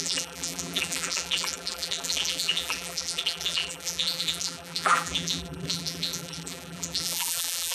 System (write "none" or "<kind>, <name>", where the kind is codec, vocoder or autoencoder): vocoder, BigVGAN v2